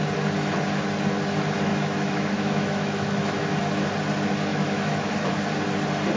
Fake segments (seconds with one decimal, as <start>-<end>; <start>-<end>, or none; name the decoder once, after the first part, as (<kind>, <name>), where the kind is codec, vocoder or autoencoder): 1.7-3.6 (autoencoder, DAC-VAE); 4.5-5.3